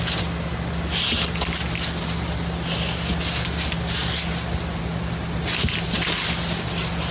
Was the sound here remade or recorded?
recorded